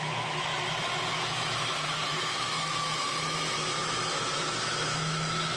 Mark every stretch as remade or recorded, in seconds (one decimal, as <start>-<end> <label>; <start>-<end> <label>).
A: 0.0-0.5 remade; 0.5-1.1 recorded; 1.1-5.6 remade